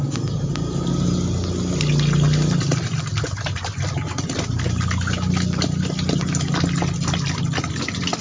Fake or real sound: real